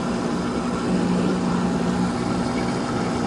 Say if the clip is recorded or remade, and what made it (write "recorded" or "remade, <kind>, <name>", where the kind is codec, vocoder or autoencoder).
remade, vocoder, BigVGAN v2